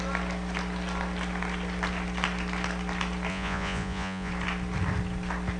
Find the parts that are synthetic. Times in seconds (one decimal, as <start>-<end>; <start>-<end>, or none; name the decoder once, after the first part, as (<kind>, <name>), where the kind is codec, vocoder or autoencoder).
3.3-4.3 (vocoder, Vocos)